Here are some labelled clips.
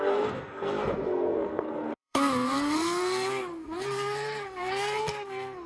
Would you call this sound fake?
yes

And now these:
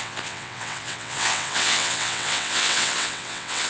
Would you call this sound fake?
yes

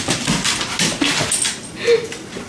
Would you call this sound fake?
no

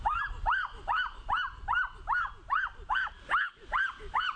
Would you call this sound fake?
no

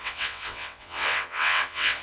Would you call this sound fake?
yes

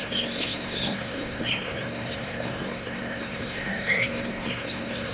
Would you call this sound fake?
yes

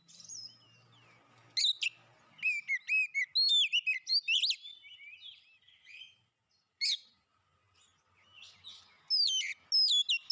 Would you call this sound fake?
no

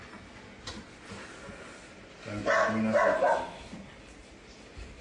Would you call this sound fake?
no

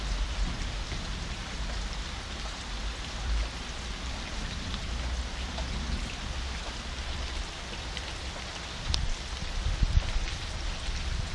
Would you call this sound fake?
yes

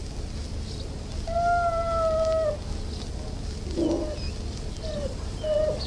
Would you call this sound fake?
no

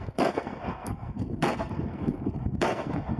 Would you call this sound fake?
yes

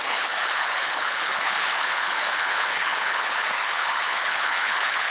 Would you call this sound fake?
yes